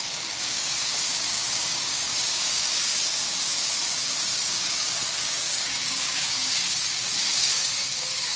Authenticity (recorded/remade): remade